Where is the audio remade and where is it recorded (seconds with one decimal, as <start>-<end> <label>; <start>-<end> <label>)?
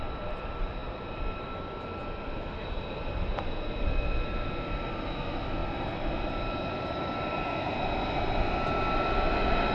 0.0-9.7 recorded